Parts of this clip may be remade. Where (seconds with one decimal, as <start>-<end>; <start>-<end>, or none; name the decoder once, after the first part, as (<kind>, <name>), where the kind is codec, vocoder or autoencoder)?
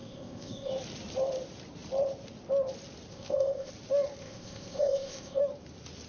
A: 0.0-0.7 (codec, ZipCodec); 3.1-3.7; 4.2-5.4